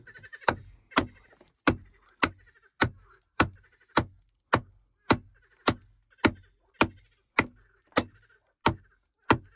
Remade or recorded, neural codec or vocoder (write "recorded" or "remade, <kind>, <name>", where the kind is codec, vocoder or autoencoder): recorded